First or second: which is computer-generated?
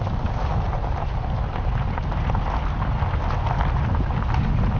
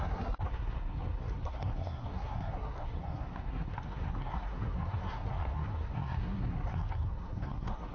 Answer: second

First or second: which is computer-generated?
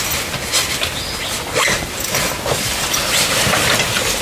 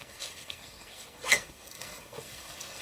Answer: second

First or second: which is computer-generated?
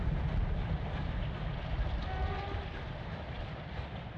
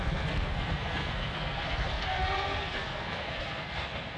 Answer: second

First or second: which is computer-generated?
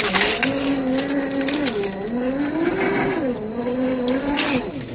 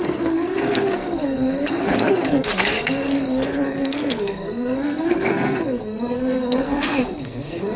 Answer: second